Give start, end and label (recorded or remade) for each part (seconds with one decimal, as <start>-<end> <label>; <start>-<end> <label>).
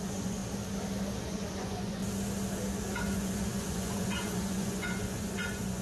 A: 0.0-0.4 remade; 0.4-1.2 recorded; 1.2-2.0 remade; 2.0-3.0 recorded; 3.0-5.8 remade